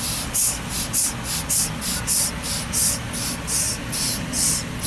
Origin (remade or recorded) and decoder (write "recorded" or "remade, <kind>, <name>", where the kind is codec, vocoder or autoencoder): recorded